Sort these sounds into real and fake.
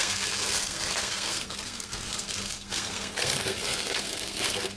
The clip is fake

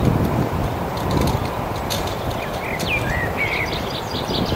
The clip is real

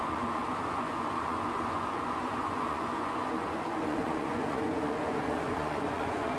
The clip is fake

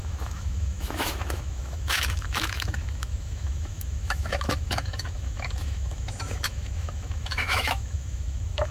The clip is fake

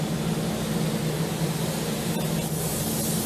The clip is real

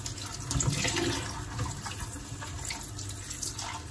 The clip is real